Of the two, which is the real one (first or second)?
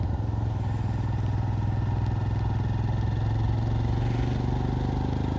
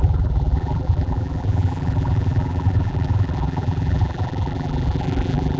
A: first